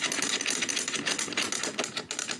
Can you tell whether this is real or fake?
real